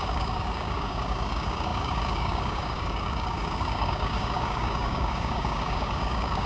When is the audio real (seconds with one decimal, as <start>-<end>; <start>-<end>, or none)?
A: none